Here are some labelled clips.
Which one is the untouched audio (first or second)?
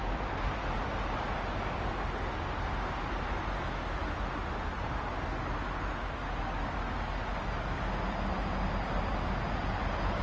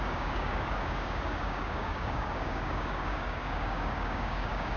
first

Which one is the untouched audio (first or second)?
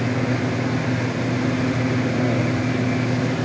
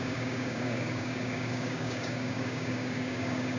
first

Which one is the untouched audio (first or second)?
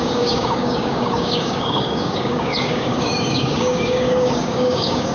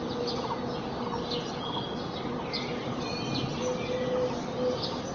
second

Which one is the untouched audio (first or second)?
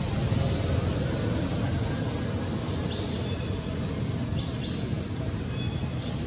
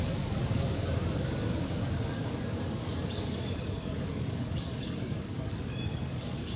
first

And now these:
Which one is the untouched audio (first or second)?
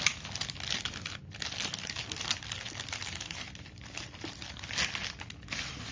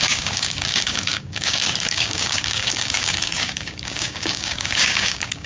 first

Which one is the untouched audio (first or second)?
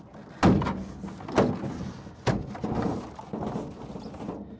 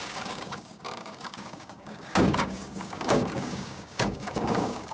first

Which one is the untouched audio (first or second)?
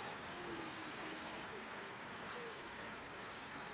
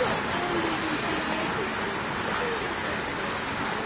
second